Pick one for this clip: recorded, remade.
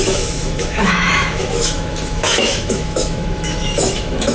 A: remade